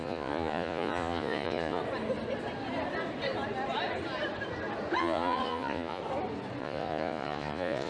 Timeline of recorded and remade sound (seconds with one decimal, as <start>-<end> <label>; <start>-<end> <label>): 0.0-1.8 remade; 1.8-5.0 recorded; 5.0-6.0 remade; 6.0-6.6 recorded; 6.6-7.9 remade